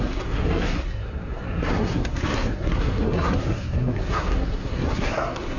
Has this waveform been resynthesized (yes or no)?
yes